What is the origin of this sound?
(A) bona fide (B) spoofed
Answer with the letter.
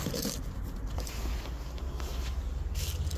A